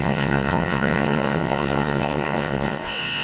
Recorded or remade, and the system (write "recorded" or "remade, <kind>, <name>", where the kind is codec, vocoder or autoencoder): remade, vocoder, WaveNeXt